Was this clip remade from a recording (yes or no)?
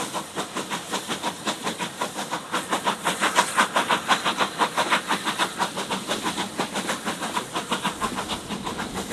no